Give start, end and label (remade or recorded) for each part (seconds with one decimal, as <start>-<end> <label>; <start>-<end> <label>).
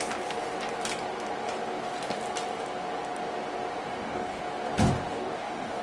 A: 0.0-3.9 recorded; 3.9-4.4 remade; 4.4-5.1 recorded; 5.1-5.8 remade